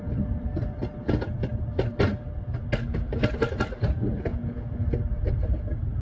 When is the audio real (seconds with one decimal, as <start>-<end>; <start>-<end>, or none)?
0.0-4.3; 4.8-6.0